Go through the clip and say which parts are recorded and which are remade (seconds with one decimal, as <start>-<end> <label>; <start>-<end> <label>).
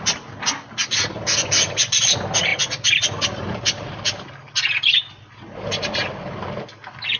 0.0-2.5 recorded; 2.5-4.3 remade; 4.3-7.2 recorded